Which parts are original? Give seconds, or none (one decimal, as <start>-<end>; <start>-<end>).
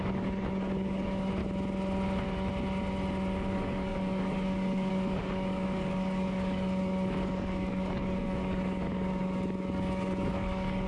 1.4-3.5